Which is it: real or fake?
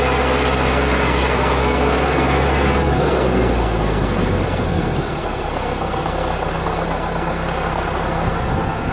fake